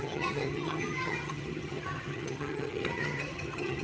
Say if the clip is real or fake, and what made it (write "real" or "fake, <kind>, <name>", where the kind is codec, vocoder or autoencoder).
fake, vocoder, HiFi-GAN